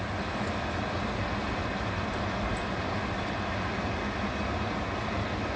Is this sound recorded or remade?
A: recorded